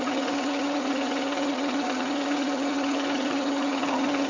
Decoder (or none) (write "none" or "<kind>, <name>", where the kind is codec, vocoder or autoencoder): vocoder, HiFi-GAN